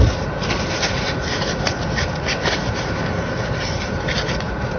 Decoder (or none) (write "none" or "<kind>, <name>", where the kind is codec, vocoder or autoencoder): none